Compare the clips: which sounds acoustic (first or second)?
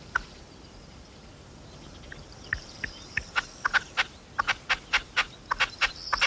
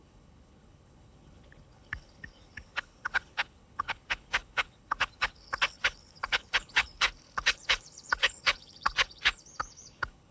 first